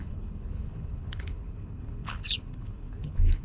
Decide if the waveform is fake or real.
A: fake